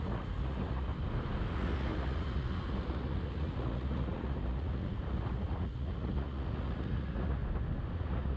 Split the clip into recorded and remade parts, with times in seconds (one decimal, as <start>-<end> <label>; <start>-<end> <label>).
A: 0.0-0.9 remade; 0.9-1.5 recorded; 1.5-7.4 remade; 7.4-7.9 recorded; 7.9-8.4 remade